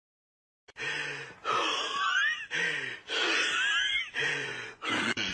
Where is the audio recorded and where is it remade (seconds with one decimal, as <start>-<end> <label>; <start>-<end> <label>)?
0.0-4.2 recorded; 4.2-5.3 remade